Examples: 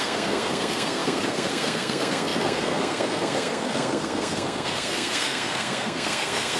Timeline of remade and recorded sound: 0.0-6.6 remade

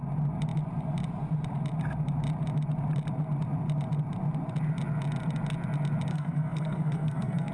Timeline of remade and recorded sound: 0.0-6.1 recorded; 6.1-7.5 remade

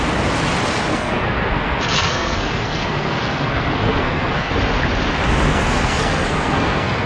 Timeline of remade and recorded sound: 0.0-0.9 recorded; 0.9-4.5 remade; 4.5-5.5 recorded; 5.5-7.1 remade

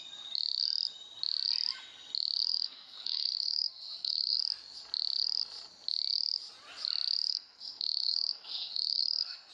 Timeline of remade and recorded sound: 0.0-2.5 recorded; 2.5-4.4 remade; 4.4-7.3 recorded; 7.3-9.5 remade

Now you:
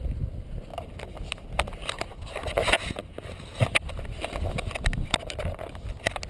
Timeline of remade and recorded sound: 0.0-6.3 recorded